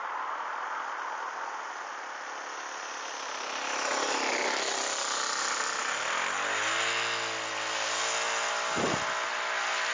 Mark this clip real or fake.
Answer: real